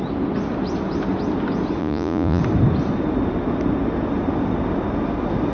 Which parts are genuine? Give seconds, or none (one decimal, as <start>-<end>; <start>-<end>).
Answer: 0.0-1.8; 2.4-5.5